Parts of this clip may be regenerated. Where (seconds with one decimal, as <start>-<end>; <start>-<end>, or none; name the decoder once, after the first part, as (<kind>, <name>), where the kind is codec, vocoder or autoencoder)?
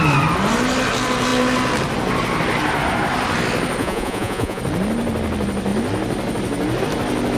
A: 3.8-4.6 (vocoder, Vocos)